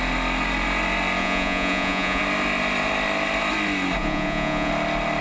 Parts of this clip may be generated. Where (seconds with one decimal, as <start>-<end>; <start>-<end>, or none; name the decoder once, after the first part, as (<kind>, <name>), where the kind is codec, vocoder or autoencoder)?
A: 1.2-2.2 (vocoder, Vocos); 4.0-4.7

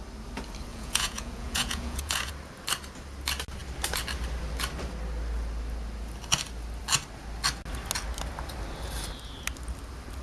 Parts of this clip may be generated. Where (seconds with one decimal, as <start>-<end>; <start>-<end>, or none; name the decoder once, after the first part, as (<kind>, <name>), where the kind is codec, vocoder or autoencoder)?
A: 0.7-2.3 (vocoder, Vocos)

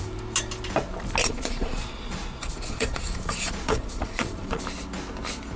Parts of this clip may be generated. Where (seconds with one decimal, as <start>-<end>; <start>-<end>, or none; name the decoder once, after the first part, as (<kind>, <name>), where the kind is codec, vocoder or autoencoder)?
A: 1.2-4.6 (vocoder, Vocos)

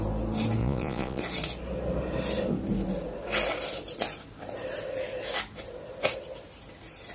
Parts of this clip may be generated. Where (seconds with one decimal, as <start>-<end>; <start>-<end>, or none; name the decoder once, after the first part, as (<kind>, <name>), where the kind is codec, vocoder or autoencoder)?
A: 0.6-1.2 (vocoder, Vocos)

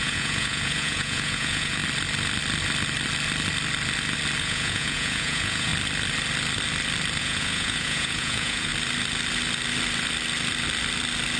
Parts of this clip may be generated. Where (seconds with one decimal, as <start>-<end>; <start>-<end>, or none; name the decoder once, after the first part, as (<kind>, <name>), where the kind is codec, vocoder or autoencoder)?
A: 0.0-1.8 (vocoder, Vocos); 4.4-5.7; 7.2-8.7

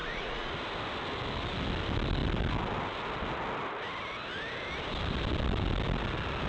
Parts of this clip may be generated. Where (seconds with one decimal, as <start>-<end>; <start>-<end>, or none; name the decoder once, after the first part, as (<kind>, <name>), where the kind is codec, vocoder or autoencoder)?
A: 0.0-0.5 (vocoder, Vocos)

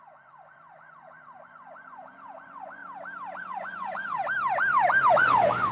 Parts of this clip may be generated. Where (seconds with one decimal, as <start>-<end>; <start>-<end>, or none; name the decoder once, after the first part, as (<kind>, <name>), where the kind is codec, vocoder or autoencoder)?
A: 0.0-2.8 (vocoder, Vocos); 3.4-4.2; 5.2-5.7

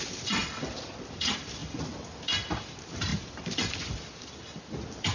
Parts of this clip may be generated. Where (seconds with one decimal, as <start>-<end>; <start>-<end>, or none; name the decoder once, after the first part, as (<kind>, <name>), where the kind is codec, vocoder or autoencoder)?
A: none